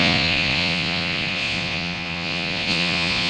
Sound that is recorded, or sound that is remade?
remade